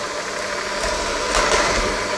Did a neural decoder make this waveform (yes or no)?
no